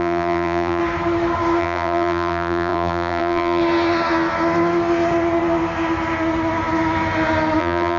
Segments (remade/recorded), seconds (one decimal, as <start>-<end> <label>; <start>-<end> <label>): 0.0-0.8 remade; 0.8-1.6 recorded; 1.6-3.6 remade; 3.6-7.6 recorded; 7.6-8.0 remade